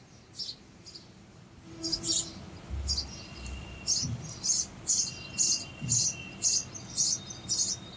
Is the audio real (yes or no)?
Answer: yes